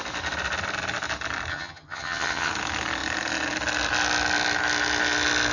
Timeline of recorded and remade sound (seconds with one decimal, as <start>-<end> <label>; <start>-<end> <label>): 0.0-1.5 recorded; 1.5-2.5 remade; 2.5-5.5 recorded